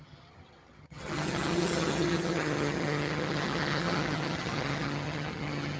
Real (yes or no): no